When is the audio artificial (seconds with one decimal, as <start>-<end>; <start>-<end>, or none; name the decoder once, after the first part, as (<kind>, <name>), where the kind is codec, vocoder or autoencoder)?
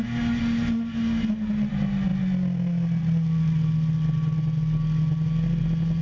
none